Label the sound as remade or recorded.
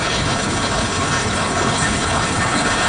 remade